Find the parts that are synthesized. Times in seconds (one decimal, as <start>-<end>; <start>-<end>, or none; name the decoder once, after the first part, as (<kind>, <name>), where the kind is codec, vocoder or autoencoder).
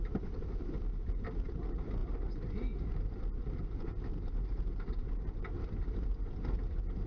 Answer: none